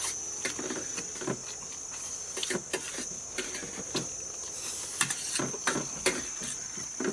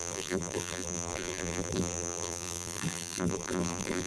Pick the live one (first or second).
first